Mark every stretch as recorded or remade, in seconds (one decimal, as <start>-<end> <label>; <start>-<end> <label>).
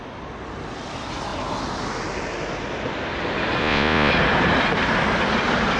0.0-3.6 recorded; 3.6-4.1 remade; 4.1-5.8 recorded